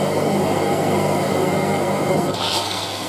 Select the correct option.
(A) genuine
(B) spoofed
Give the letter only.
B